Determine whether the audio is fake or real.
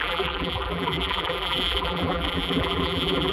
fake